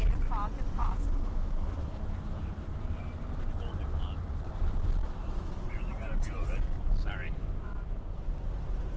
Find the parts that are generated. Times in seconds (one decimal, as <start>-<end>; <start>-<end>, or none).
0.8-2.8; 5.0-5.6; 7.4-8.0